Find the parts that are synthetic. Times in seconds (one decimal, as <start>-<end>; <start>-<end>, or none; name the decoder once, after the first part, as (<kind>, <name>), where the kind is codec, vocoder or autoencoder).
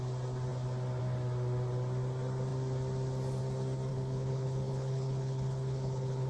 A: 3.9-6.3 (codec, HILCodec)